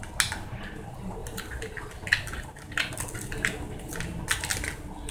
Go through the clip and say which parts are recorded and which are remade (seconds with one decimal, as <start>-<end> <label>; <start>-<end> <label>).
0.0-5.1 recorded